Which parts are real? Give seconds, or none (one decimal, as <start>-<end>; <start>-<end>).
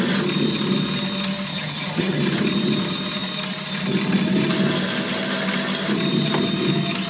0.0-1.5; 2.2-7.1